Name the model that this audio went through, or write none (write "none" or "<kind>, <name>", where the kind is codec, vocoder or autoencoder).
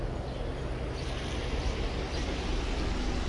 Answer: none